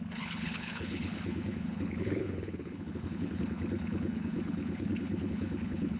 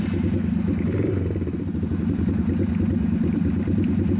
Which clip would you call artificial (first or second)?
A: first